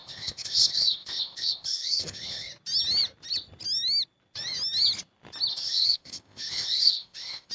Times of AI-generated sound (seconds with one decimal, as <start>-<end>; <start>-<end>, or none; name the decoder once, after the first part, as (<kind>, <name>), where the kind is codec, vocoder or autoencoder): 0.0-2.5 (codec, ZipCodec); 5.5-7.5